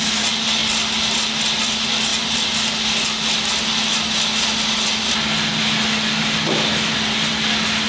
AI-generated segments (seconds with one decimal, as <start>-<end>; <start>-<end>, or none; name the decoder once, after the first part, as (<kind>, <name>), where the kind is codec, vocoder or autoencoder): none